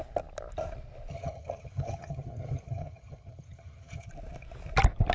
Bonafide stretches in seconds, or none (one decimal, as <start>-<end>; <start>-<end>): 0.0-1.1; 4.1-5.1